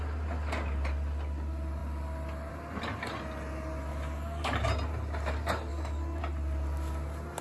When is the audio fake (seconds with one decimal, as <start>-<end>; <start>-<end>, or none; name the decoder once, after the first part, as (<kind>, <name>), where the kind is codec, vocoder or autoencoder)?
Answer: 3.9-4.7 (codec, DAC); 5.7-6.2